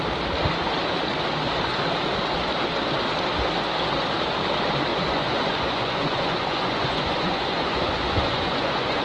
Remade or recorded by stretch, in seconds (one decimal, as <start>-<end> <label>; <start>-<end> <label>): 0.0-4.9 recorded; 4.9-9.0 remade